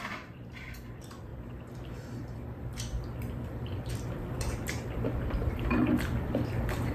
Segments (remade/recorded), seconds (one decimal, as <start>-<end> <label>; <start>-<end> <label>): 0.0-6.9 remade

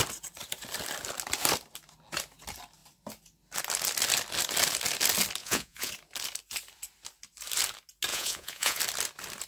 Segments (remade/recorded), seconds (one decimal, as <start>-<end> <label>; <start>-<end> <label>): 0.0-5.4 recorded; 5.4-5.9 remade; 5.9-8.1 recorded; 8.1-8.8 remade; 8.8-9.5 recorded